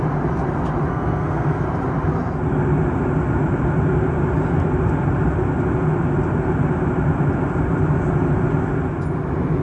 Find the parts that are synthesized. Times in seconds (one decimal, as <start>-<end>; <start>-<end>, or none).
0.9-1.6